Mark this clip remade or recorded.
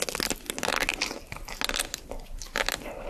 recorded